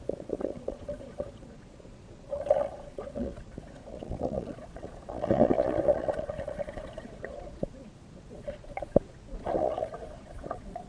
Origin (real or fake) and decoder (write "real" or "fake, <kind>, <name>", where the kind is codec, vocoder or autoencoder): fake, vocoder, Vocos